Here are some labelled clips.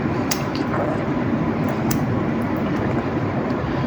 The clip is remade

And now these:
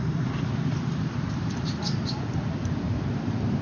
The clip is remade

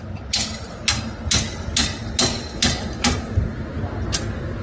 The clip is recorded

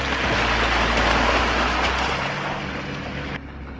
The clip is recorded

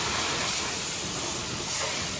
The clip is recorded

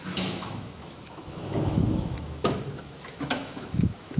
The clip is remade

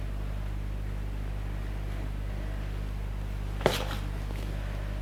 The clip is recorded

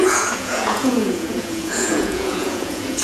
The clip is remade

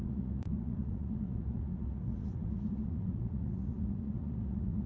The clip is remade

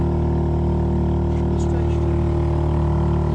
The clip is recorded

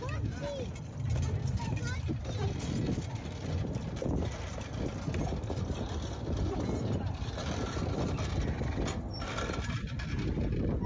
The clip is recorded